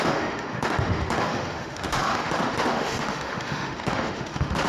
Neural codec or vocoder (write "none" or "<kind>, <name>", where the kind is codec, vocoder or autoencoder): autoencoder, DAC-VAE